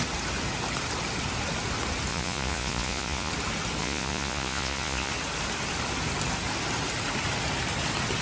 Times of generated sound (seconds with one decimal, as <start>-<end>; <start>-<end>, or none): 2.1-3.3; 3.8-5.1